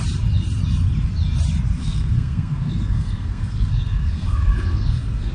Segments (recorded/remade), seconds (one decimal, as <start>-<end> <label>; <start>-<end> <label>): 0.0-1.8 recorded; 1.8-5.3 remade